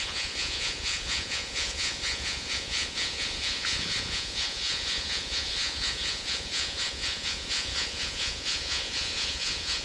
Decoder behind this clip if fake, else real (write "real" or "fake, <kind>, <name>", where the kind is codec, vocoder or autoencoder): fake, vocoder, Vocos